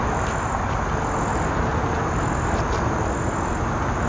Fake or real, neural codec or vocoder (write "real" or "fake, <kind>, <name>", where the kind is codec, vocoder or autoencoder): real